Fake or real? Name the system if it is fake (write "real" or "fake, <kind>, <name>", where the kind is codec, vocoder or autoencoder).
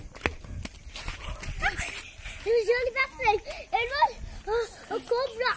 real